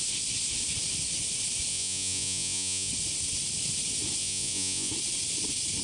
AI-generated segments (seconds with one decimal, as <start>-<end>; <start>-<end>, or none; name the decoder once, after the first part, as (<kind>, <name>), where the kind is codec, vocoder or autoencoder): 1.7-2.9 (vocoder, Vocos); 4.2-4.9